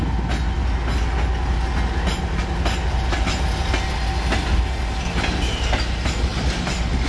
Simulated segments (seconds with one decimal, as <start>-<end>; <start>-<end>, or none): none